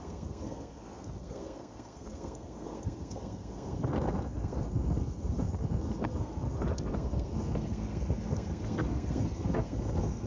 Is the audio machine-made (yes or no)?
yes